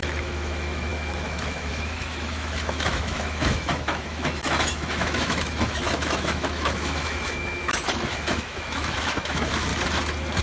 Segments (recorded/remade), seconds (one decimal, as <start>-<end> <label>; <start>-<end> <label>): 0.0-9.7 remade; 9.7-10.4 recorded